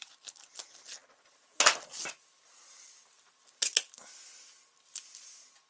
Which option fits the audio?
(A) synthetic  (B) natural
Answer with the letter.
B